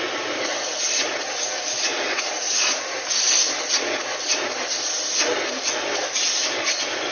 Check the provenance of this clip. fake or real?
real